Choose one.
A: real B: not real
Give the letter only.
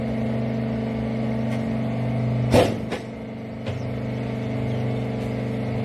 A